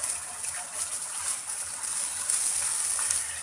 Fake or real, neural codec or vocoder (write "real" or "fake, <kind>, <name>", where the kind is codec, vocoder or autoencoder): real